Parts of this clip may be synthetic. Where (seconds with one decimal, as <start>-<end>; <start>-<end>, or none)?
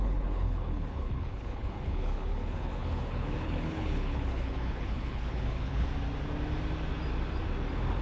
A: 0.0-5.9